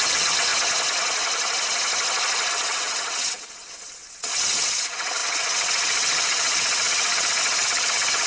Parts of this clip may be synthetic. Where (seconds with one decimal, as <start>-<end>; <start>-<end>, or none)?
0.0-0.5; 2.5-8.3